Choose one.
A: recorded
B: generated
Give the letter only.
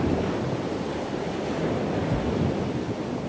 A